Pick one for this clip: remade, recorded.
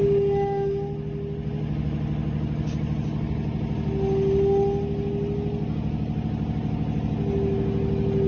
recorded